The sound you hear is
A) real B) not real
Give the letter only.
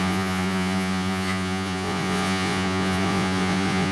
B